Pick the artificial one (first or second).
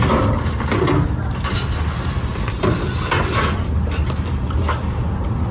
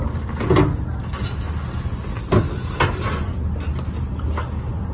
first